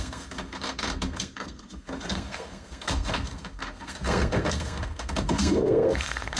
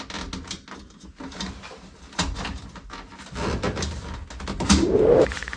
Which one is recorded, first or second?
second